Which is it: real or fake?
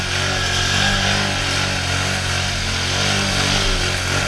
real